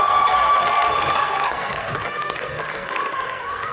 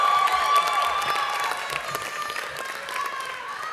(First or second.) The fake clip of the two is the first